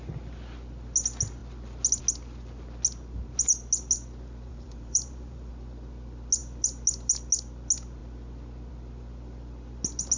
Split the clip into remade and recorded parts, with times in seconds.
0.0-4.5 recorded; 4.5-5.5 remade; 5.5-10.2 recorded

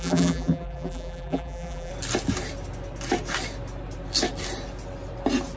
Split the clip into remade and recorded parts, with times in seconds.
0.0-1.9 remade; 1.9-5.6 recorded